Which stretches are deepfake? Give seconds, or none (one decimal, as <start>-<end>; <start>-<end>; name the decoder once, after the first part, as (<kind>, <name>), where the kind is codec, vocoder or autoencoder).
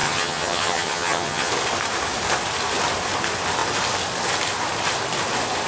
0.0-1.5 (vocoder, HiFi-GAN)